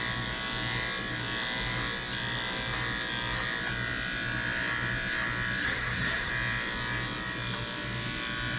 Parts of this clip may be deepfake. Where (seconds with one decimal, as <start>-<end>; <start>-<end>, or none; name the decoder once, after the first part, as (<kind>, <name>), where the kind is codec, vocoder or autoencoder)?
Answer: 5.6-6.3 (codec, SNAC)